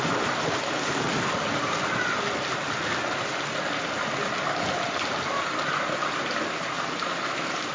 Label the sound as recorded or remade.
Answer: recorded